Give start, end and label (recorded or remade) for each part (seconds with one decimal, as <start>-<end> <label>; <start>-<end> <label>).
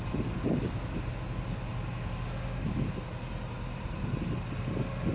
0.0-5.1 recorded